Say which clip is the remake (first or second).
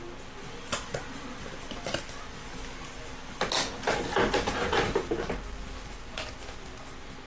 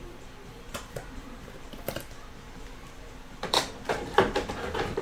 second